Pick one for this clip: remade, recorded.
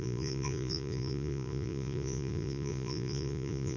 remade